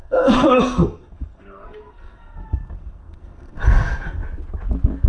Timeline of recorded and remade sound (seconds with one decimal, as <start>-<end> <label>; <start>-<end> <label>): 0.0-4.2 remade; 4.2-5.1 recorded